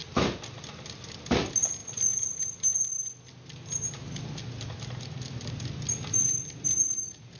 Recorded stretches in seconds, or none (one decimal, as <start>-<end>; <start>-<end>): 0.0-7.4